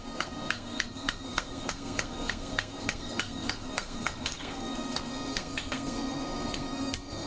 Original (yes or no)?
no